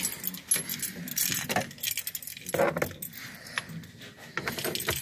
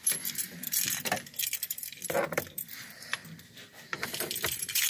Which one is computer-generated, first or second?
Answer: second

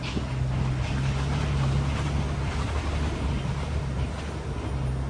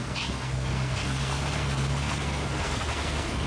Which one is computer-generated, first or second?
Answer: second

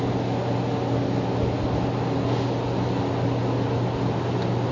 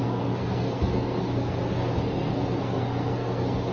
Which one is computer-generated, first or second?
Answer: second